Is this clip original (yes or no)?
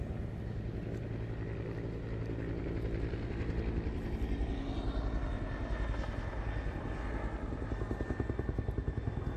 yes